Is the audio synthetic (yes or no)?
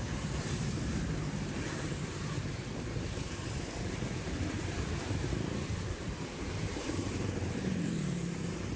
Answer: yes